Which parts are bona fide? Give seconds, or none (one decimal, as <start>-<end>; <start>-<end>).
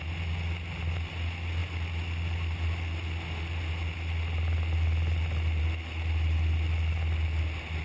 0.0-7.8